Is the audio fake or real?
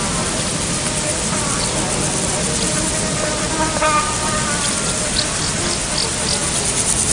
real